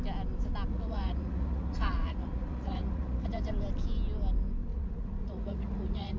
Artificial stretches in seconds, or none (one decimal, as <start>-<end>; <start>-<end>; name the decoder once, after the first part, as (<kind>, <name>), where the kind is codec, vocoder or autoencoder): 0.7-3.5 (vocoder, Vocos); 4.7-6.2